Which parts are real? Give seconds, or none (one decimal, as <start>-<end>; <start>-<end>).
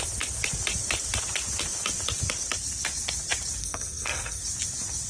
0.0-3.6; 4.4-5.1